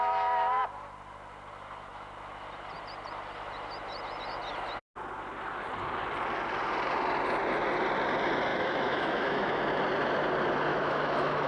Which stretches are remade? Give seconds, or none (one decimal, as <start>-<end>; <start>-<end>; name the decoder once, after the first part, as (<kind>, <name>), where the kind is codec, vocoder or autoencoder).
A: 8.5-9.6 (autoencoder, DAC-VAE); 10.7-11.5